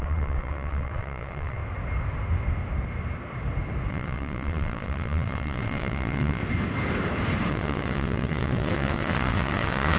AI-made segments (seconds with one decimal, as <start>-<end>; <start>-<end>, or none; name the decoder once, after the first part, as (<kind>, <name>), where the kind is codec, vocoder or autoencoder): 0.0-1.6 (vocoder, WaveNeXt); 3.9-6.4; 7.5-10.0